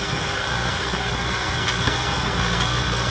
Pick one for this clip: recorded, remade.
remade